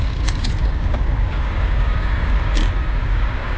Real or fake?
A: fake